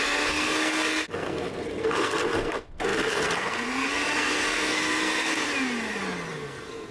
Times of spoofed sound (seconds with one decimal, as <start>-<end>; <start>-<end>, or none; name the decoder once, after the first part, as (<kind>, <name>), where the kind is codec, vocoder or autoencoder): 0.0-5.5 (codec, SNAC); 6.3-6.9